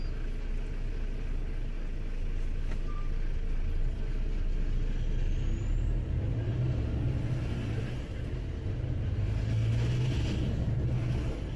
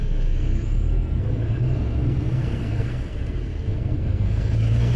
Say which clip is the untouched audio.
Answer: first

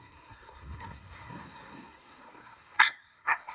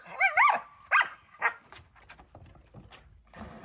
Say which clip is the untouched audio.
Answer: second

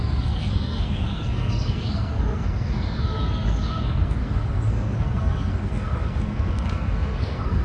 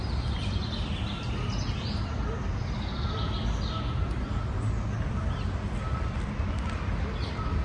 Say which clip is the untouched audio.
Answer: second